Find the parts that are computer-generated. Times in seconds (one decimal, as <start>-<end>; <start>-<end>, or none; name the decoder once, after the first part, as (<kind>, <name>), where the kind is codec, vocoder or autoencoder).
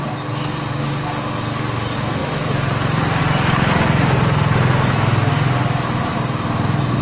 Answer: none